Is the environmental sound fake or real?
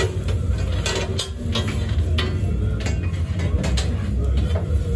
real